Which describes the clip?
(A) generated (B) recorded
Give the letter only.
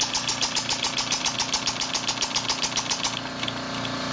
B